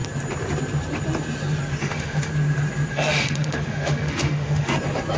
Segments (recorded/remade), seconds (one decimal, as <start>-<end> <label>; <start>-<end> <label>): 0.0-1.8 recorded; 1.8-2.3 remade; 2.3-2.9 recorded; 2.9-4.7 remade; 4.7-5.2 recorded